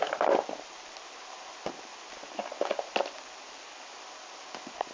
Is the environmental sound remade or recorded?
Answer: recorded